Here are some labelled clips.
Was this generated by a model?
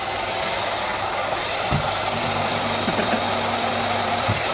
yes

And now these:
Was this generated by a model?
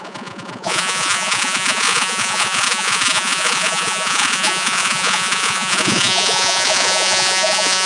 yes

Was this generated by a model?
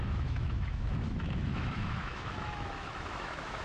yes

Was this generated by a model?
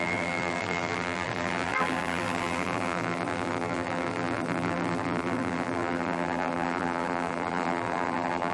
yes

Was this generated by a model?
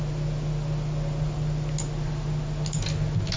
no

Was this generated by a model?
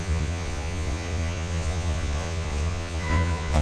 yes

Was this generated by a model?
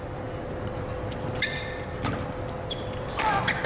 no